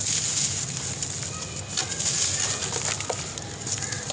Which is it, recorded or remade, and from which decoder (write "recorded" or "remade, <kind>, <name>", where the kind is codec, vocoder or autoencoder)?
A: recorded